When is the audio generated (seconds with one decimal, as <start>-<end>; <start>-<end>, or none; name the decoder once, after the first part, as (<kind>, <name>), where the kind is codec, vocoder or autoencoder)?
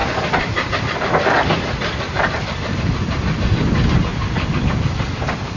0.0-4.1 (vocoder, BigVGAN v2); 4.6-5.6